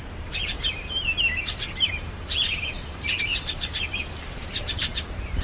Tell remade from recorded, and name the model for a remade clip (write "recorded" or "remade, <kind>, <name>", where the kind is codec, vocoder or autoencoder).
remade, vocoder, BigVGAN v2